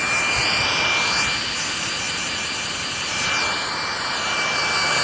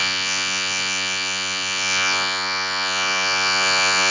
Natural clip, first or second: first